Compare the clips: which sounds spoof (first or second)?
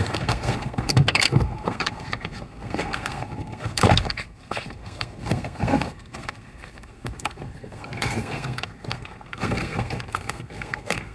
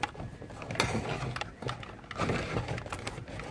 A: first